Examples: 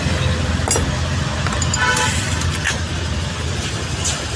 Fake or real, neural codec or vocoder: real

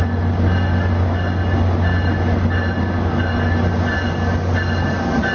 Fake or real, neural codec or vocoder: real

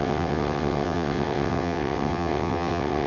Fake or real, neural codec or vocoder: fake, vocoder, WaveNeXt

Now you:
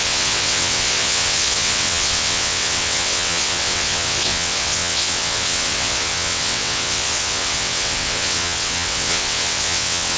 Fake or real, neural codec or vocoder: fake, vocoder, WaveNeXt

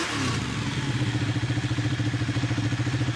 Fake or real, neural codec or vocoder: real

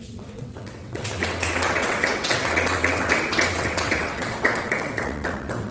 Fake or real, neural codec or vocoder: fake, vocoder, WaveNeXt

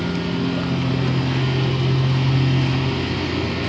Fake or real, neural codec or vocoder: real